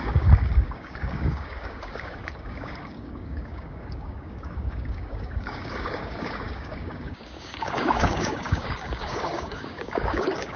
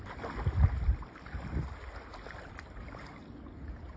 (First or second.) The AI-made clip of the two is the first